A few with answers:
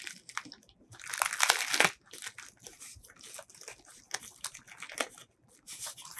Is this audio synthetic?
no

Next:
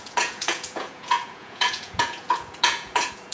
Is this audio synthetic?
yes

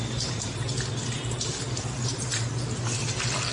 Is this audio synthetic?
no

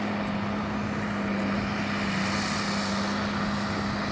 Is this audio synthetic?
no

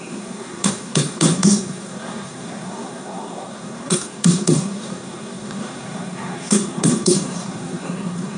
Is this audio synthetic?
yes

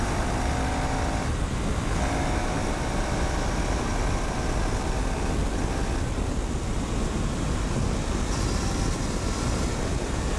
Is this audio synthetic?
no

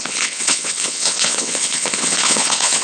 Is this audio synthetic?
yes